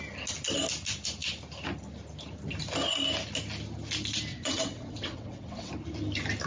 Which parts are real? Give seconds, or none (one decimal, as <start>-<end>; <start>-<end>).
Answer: 0.0-4.3; 5.7-6.5